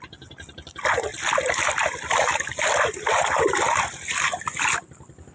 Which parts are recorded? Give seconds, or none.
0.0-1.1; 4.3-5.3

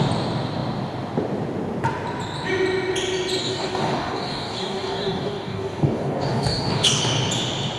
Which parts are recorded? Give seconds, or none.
0.0-3.4; 7.0-7.8

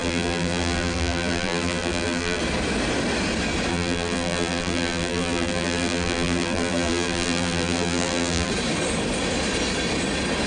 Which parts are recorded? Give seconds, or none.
2.4-3.7; 8.5-10.5

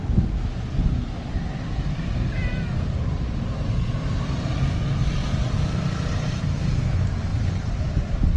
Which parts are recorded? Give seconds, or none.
0.0-5.2; 6.4-7.3